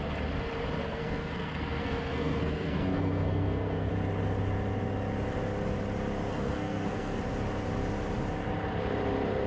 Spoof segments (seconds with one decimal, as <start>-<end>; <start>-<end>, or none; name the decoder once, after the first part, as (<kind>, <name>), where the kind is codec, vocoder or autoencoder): 0.8-3.9 (codec, SNAC); 6.3-7.2